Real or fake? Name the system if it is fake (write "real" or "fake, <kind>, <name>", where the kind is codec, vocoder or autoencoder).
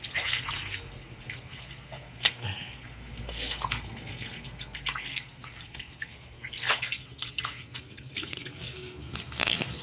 fake, codec, SNAC